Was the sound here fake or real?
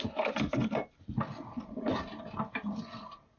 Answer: real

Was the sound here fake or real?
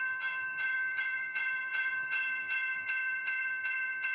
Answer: fake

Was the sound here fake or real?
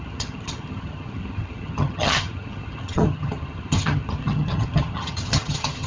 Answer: fake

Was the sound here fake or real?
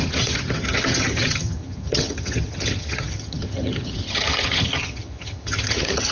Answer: fake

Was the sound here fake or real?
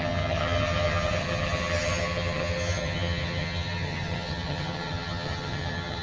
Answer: fake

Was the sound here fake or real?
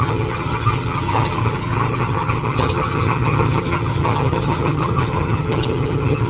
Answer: fake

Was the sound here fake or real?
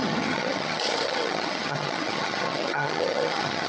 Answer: fake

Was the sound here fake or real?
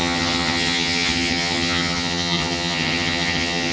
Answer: fake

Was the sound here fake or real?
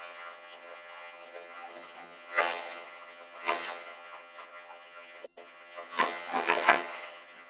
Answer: fake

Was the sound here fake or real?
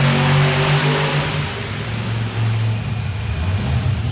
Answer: real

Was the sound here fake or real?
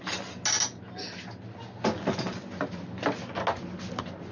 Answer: real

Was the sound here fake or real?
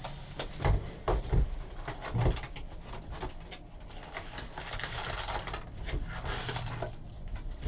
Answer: real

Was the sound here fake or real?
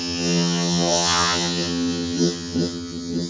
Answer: fake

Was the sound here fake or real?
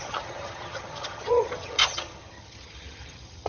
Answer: fake